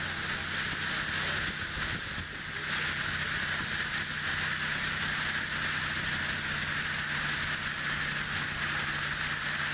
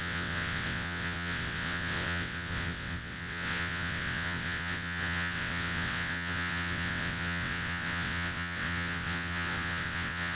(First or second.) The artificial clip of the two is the second